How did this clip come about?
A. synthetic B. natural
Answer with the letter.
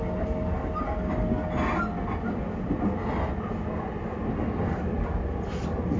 B